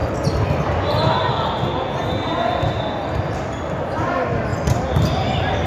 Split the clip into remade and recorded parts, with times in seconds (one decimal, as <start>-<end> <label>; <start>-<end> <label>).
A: 0.0-5.7 recorded